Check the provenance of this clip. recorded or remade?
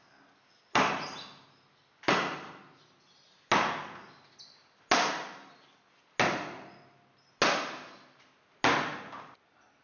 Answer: recorded